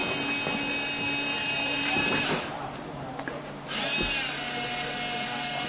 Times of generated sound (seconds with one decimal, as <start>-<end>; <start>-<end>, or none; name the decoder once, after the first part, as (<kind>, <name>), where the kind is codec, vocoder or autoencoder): 1.3-3.5 (vocoder, BigVGAN v2)